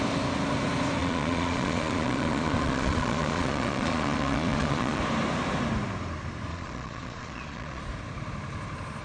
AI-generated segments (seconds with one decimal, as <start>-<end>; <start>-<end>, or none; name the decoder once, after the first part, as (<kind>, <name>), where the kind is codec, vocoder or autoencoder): 1.0-5.0 (vocoder, Vocos); 6.5-7.8